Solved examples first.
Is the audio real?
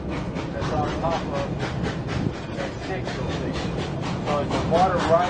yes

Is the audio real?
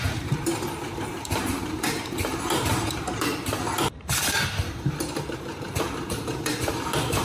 no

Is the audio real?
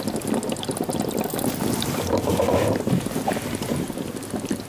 yes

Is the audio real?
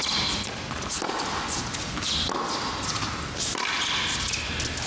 yes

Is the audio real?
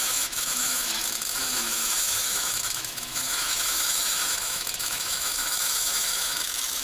no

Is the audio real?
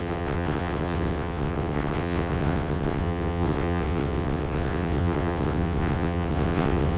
no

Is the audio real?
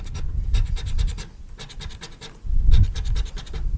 yes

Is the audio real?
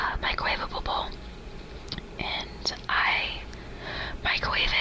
yes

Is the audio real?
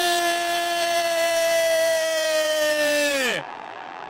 no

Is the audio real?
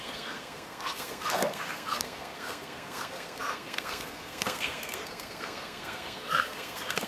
no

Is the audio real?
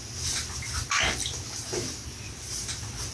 yes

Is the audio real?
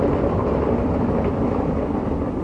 yes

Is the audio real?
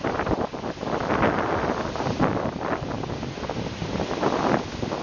yes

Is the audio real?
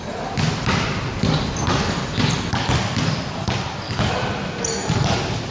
yes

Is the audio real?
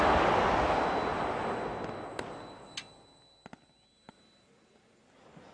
yes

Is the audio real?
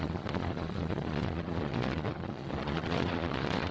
no